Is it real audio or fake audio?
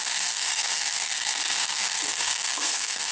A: fake